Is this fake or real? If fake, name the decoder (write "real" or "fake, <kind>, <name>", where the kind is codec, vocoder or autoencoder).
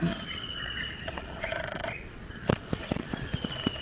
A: fake, vocoder, Vocos